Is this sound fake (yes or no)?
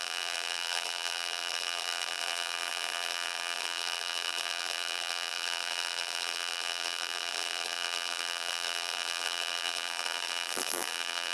yes